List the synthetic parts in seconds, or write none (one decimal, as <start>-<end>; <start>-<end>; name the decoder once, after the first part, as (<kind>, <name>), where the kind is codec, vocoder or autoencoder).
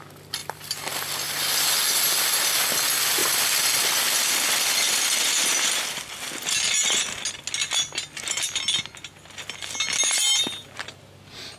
0.4-0.9 (vocoder, BigVGAN v2)